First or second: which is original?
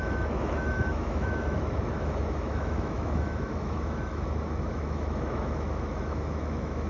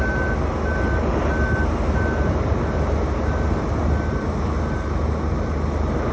second